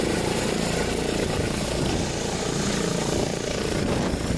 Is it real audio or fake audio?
real